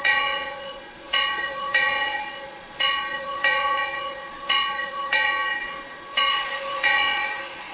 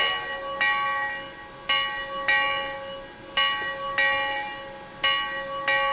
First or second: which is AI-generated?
first